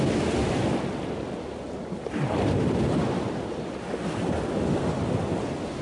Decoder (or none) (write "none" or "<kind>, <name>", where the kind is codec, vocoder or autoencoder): none